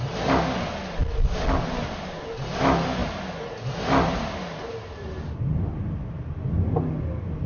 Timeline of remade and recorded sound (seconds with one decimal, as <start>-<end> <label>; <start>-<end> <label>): 0.0-7.5 recorded

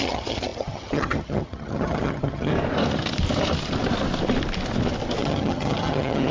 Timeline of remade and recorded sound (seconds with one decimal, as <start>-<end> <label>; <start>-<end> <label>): 0.0-2.5 remade; 2.5-5.2 recorded; 5.2-6.3 remade

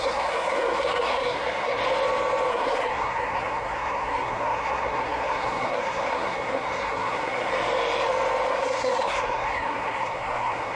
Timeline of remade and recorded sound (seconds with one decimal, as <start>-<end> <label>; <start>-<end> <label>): 0.0-1.8 remade; 1.8-2.5 recorded; 2.5-7.5 remade; 7.5-8.5 recorded; 8.5-10.8 remade

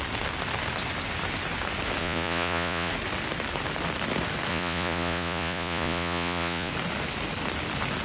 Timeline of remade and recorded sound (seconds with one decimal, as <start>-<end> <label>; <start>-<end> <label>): 0.0-2.0 recorded; 2.0-2.9 remade; 2.9-4.5 recorded; 4.5-6.7 remade; 6.7-8.0 recorded

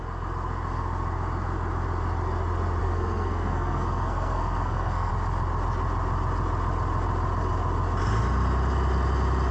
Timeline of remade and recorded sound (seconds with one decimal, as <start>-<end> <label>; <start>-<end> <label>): 0.0-2.8 recorded; 2.8-5.1 remade; 5.1-9.5 recorded

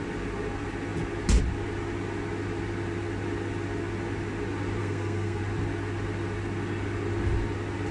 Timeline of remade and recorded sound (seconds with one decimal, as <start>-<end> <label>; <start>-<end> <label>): 0.0-4.8 recorded; 4.8-5.4 remade; 5.4-7.9 recorded

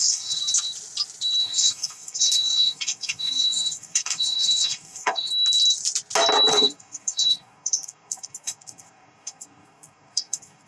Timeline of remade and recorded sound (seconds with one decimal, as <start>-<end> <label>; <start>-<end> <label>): 0.0-0.4 remade; 0.4-1.4 recorded; 1.4-5.3 remade; 5.3-6.5 recorded; 6.5-10.7 remade